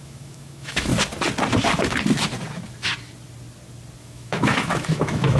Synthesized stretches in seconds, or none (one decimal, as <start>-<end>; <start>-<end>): 0.0-0.9; 4.0-5.4